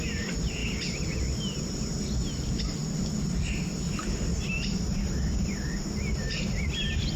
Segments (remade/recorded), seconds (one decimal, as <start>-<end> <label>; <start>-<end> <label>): 0.0-7.2 recorded